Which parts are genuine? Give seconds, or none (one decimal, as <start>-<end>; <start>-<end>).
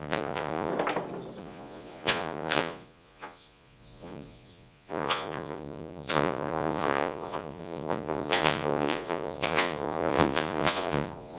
0.7-1.4